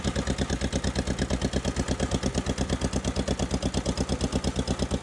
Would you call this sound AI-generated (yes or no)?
no